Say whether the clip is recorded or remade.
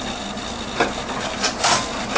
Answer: recorded